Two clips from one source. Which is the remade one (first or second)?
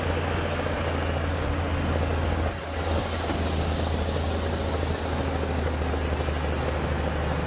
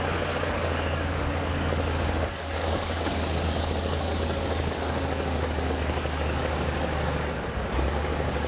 second